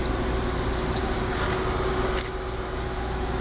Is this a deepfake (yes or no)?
no